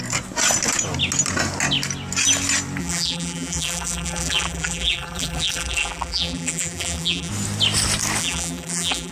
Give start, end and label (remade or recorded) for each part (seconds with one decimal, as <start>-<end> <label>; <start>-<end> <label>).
0.0-2.8 recorded; 2.8-7.3 remade; 7.3-8.2 recorded; 8.2-9.1 remade